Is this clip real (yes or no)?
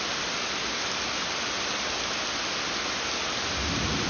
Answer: yes